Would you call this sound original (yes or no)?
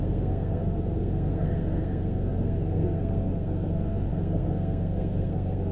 no